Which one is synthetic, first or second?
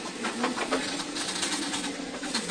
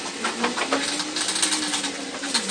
first